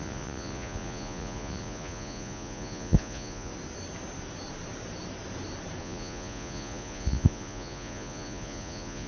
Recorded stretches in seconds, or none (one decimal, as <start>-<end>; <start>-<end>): 3.5-5.8